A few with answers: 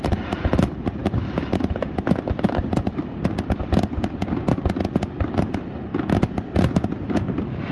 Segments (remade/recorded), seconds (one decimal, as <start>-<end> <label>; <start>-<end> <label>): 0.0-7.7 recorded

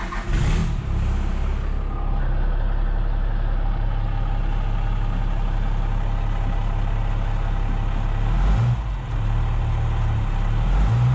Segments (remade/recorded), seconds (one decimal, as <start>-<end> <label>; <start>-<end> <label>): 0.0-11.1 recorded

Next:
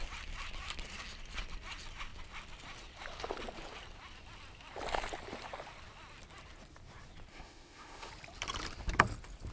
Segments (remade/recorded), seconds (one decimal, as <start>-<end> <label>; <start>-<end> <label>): 0.0-7.3 recorded; 7.3-8.1 remade; 8.1-9.5 recorded

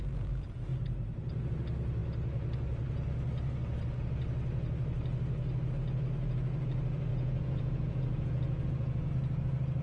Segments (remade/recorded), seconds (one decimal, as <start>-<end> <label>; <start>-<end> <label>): 0.0-7.1 recorded; 7.1-9.1 remade; 9.1-9.8 recorded

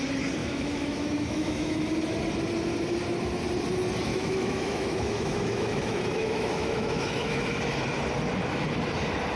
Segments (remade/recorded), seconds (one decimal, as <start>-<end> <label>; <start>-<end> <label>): 0.0-0.4 recorded; 0.4-1.9 remade; 1.9-4.1 recorded; 4.1-7.6 remade; 7.6-9.4 recorded

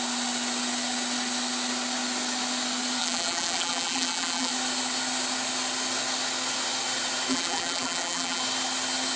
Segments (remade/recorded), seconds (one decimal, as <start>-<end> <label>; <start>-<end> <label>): 0.0-3.0 recorded; 3.0-4.5 remade; 4.5-7.3 recorded; 7.3-8.4 remade; 8.4-9.2 recorded

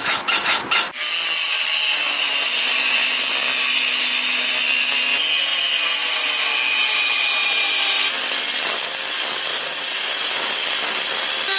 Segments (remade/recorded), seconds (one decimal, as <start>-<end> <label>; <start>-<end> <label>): 0.0-9.5 recorded; 9.5-10.1 remade; 10.1-11.6 recorded